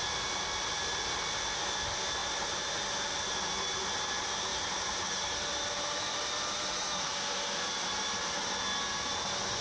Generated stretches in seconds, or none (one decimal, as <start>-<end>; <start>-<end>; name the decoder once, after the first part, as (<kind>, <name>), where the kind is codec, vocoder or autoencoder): 2.2-3.2 (vocoder, BigVGAN v2); 4.5-6.2